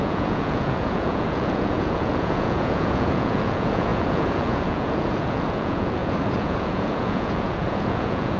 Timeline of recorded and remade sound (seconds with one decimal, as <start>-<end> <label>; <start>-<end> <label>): 0.0-8.4 remade